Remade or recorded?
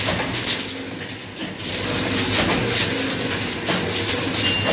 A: recorded